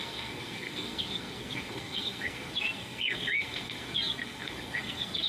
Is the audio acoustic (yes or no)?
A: no